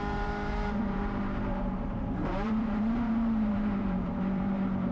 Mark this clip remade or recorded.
remade